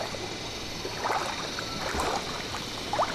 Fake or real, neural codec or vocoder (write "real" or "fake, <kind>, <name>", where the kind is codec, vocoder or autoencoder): real